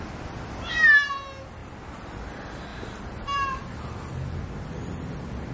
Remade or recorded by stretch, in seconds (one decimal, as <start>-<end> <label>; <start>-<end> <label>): 0.0-1.6 recorded; 1.6-2.1 remade; 2.1-2.7 recorded; 2.7-4.4 remade; 4.4-5.5 recorded